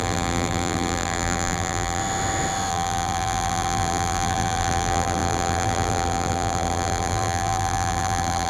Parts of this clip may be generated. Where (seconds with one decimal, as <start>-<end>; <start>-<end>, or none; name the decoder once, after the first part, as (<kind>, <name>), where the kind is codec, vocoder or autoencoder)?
0.0-2.0 (vocoder, BigVGAN v2); 2.7-8.5